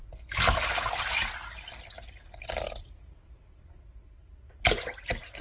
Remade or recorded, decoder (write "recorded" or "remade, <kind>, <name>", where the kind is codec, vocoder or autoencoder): recorded